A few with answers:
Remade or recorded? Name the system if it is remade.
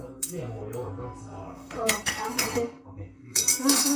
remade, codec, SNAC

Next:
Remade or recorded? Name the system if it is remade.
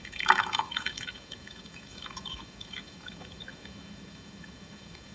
remade, autoencoder, DAC-VAE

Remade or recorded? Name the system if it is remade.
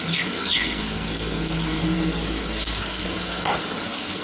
remade, codec, SNAC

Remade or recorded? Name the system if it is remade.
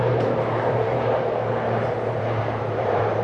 remade, vocoder, BigVGAN v2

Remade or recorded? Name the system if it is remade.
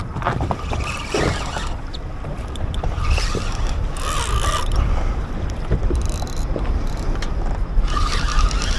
recorded